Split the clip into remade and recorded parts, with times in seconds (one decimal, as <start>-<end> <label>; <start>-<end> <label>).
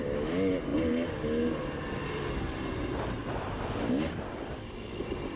0.0-5.4 recorded